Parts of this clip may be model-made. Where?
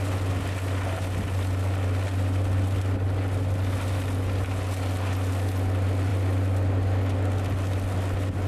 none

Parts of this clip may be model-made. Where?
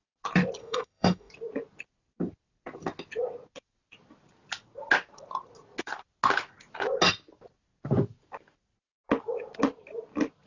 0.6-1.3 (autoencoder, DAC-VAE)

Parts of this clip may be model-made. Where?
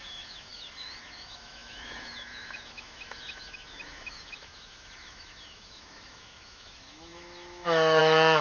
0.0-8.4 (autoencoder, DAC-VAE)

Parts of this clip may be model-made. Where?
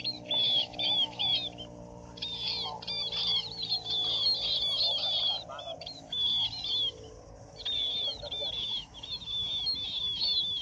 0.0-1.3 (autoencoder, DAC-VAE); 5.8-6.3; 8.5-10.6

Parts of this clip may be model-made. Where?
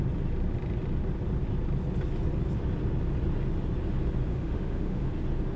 4.3-5.1 (autoencoder, DAC-VAE)